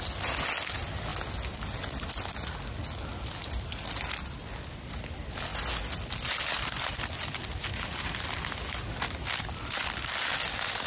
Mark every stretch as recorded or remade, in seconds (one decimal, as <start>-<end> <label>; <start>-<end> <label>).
0.0-10.9 recorded